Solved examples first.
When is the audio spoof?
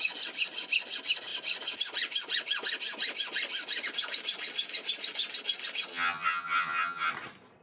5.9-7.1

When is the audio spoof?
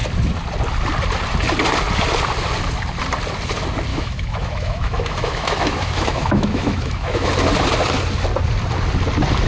3.9-7.3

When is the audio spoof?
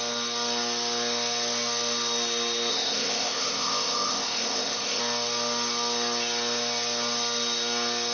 2.7-5.0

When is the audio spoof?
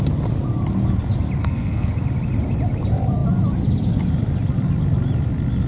1.4-1.9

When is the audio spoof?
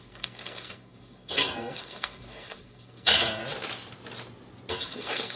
0.0-3.4; 4.7-5.4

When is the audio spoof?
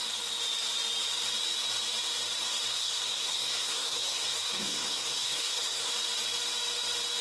2.7-5.9